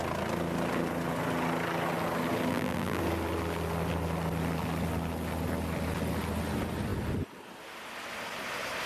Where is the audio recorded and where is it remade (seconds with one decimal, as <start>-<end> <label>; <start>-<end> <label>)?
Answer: 0.0-2.5 recorded; 2.5-3.0 remade; 3.0-8.9 recorded